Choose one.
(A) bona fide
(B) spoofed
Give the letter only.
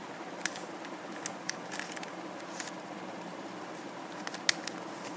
A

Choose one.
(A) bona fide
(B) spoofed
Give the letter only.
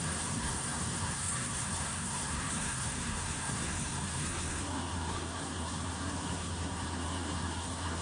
B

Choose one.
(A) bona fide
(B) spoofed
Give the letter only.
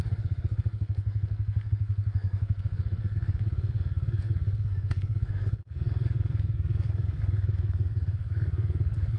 B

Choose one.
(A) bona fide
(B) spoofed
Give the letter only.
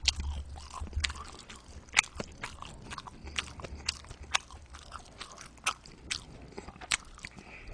A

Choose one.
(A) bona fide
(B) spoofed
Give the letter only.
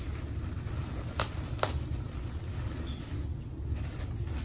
A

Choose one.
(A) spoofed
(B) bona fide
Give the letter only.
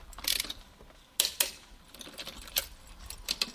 B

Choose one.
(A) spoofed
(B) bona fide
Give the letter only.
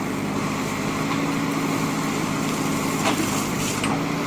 B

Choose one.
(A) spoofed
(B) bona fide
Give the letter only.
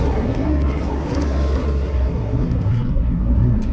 A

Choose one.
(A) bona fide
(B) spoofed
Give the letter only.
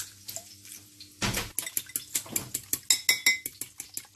A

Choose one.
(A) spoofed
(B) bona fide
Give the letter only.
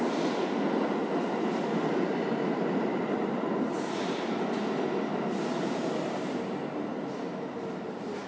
B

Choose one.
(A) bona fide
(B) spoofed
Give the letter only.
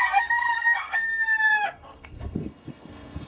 B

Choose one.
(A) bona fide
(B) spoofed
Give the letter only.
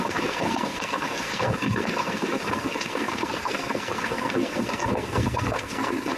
B